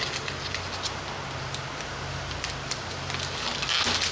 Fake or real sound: real